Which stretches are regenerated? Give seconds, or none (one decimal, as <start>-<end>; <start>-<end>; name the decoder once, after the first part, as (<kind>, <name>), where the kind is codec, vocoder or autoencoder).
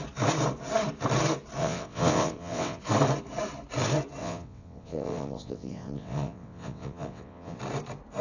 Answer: 1.6-2.8 (vocoder, WaveNeXt); 4.2-7.6